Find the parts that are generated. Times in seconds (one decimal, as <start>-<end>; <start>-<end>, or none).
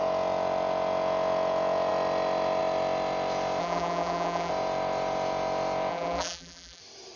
3.6-4.5; 5.9-6.8